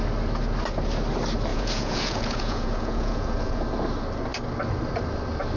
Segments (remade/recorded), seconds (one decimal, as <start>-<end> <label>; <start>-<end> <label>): 0.0-1.5 recorded; 1.5-3.6 remade; 3.6-5.6 recorded